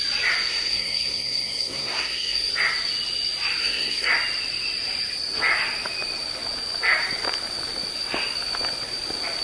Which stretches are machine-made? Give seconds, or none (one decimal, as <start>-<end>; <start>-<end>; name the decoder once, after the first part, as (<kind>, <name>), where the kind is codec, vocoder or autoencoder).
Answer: 0.5-2.5 (codec, SNAC); 3.6-4.1